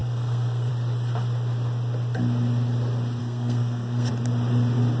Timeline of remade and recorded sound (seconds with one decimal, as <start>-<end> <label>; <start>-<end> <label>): 0.0-0.7 remade; 0.7-3.2 recorded; 3.2-4.1 remade; 4.1-5.0 recorded

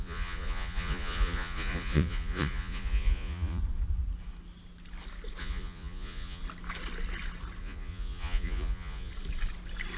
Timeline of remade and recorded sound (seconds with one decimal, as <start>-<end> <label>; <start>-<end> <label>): 0.0-3.6 remade; 3.6-5.4 recorded; 5.4-6.4 remade; 6.4-7.6 recorded; 7.6-9.1 remade; 9.1-10.0 recorded

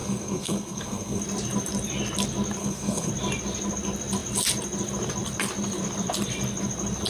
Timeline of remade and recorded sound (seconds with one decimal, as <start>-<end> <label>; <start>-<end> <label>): 0.0-1.2 remade; 1.2-2.6 recorded; 2.6-3.1 remade; 3.1-7.1 recorded

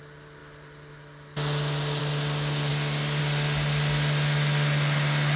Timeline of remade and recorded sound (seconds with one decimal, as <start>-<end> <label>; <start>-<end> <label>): 0.0-2.7 recorded; 2.7-3.2 remade; 3.2-5.4 recorded

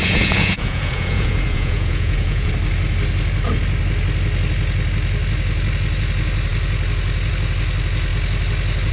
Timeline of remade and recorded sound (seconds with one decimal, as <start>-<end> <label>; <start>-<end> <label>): 0.0-2.5 remade; 2.5-8.9 recorded

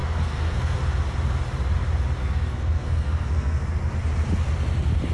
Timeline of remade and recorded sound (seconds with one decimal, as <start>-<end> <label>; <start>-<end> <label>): 0.0-0.8 remade; 0.8-2.2 recorded; 2.2-3.6 remade; 3.6-5.1 recorded